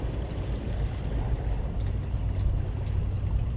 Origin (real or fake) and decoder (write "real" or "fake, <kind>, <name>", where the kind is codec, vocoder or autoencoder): real